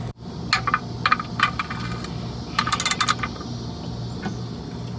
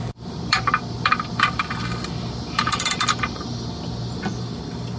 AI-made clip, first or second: second